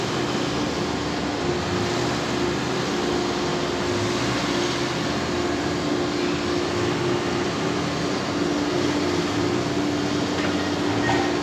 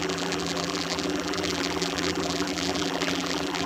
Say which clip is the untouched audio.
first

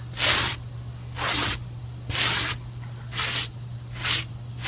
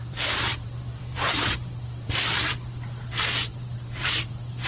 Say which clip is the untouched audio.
first